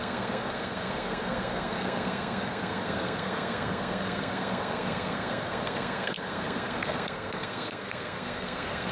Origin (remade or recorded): remade